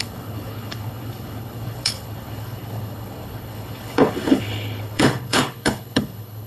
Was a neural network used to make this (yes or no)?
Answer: yes